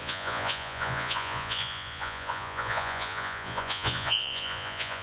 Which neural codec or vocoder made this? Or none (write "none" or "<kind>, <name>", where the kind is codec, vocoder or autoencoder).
vocoder, Vocos